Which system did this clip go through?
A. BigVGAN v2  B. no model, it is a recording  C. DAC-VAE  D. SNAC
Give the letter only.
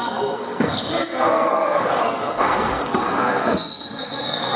D